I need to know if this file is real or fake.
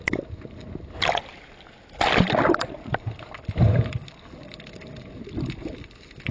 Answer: real